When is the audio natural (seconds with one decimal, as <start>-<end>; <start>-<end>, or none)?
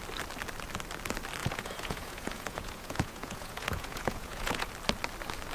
0.0-1.4; 4.7-5.5